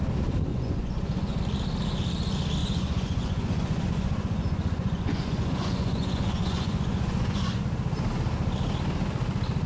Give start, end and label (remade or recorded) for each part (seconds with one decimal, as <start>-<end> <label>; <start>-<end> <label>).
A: 0.0-0.5 recorded; 0.5-1.4 remade; 1.4-2.6 recorded; 2.6-7.6 remade; 7.6-9.7 recorded